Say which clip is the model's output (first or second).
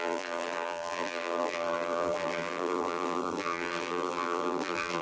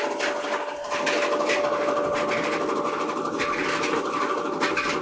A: first